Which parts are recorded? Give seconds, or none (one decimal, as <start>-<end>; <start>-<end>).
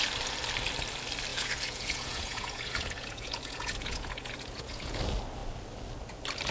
0.0-1.3; 5.0-6.5